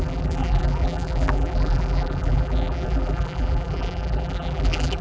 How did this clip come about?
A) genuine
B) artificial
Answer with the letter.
B